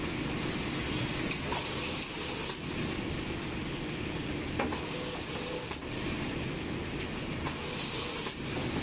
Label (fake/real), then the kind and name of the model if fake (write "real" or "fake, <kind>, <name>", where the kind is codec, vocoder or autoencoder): real